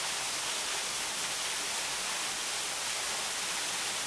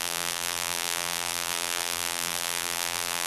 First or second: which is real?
first